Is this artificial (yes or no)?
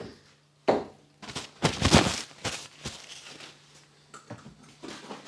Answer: no